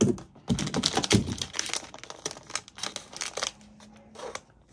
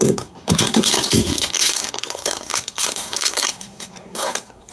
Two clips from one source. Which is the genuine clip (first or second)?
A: first